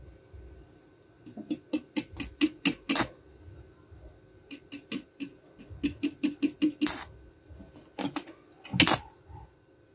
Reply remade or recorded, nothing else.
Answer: recorded